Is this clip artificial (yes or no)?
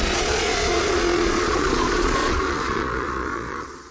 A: yes